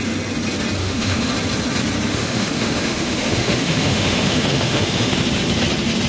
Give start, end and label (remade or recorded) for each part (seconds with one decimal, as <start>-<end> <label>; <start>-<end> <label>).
0.0-0.8 recorded; 0.8-1.3 remade; 1.3-2.1 recorded; 2.1-5.1 remade; 5.1-6.1 recorded